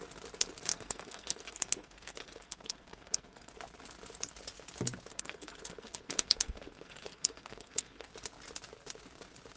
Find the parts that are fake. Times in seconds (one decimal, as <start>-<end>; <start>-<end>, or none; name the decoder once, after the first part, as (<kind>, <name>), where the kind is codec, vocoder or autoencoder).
0.7-3.5 (codec, SNAC); 5.1-8.1